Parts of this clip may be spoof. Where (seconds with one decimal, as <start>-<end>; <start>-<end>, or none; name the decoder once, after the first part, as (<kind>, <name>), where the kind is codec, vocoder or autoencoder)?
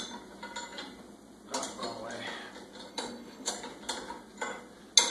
2.9-3.5 (codec, HILCodec)